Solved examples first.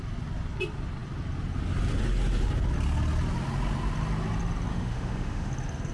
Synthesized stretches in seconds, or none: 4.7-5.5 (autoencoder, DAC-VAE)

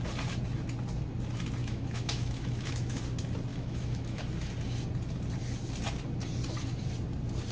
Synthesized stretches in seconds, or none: 1.6-3.0 (autoencoder, DAC-VAE); 3.5-4.2

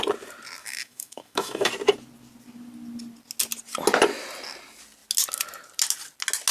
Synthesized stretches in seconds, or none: 0.6-1.7 (autoencoder, DAC-VAE)

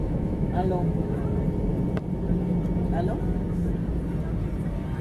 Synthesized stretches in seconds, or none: 0.0-1.2 (autoencoder, DAC-VAE)

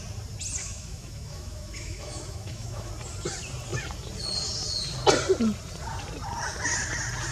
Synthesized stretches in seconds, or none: 0.6-2.9 (autoencoder, DAC-VAE)

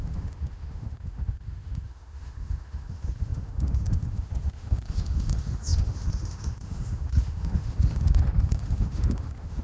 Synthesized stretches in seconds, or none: 0.0-9.6 (autoencoder, DAC-VAE)

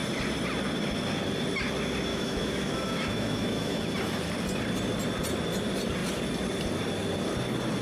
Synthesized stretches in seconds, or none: 2.1-3.8 (autoencoder, DAC-VAE)